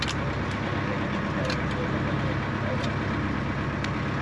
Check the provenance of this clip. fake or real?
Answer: real